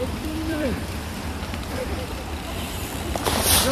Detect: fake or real fake